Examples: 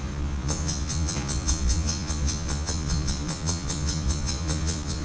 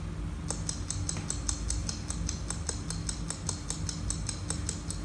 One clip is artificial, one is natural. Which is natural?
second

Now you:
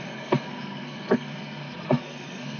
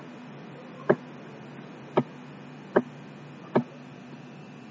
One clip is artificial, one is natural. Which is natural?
second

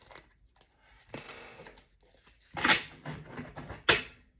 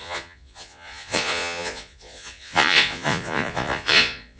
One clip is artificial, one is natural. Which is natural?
first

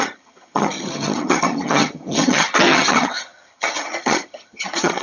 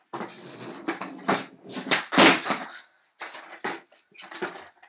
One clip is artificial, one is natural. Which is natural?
second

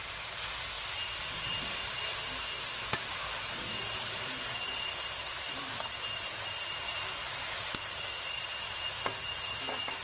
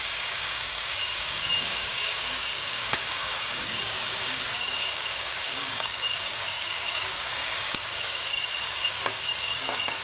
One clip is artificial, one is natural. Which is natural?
first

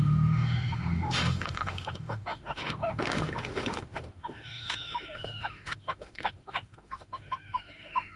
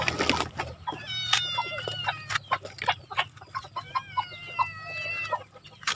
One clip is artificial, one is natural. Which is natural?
second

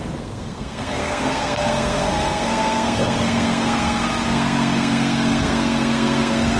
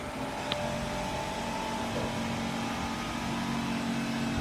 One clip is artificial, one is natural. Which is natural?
second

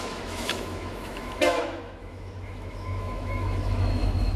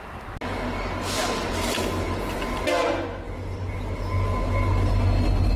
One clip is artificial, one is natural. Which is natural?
second